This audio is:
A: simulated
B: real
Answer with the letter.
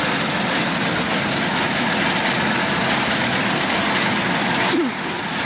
B